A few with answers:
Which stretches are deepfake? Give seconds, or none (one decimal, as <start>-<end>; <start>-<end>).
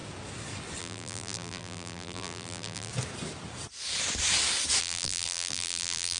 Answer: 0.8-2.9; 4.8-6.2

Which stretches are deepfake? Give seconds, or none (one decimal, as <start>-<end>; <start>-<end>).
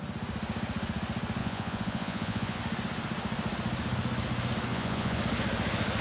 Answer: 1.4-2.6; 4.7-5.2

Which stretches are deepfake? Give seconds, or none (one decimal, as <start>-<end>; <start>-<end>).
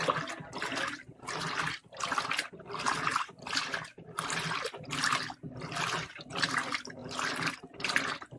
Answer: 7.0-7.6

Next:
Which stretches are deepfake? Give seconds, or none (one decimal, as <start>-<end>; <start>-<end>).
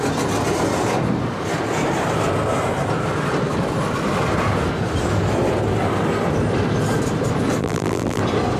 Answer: 7.6-8.2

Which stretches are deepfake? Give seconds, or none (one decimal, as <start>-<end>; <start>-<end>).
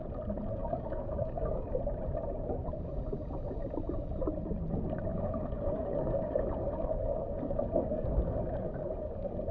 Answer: 0.6-1.8; 5.1-9.5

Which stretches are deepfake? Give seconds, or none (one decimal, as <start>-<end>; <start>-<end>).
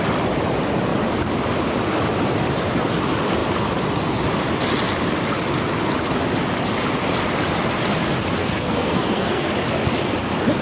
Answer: 8.4-9.5